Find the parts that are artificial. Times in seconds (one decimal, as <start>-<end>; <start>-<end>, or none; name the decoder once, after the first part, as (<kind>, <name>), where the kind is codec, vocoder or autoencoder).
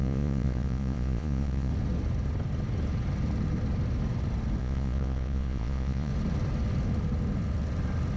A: 0.0-1.7 (vocoder, Vocos); 4.6-6.1